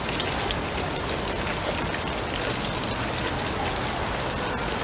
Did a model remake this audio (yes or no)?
no